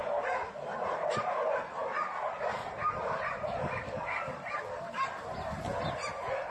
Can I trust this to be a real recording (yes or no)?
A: yes